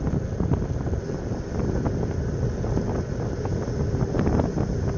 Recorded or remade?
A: recorded